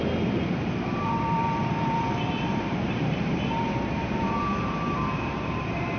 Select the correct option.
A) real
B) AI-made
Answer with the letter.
B